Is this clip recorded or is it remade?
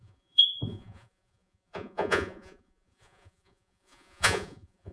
remade